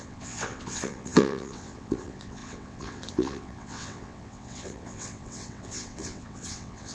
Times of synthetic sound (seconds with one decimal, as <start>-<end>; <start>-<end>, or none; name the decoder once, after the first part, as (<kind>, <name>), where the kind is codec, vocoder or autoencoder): 0.0-6.9 (vocoder, WaveNeXt)